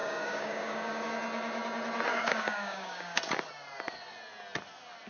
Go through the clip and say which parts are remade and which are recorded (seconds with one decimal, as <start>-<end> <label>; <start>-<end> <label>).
0.0-1.1 remade; 1.1-2.1 recorded; 2.1-3.2 remade; 3.2-5.1 recorded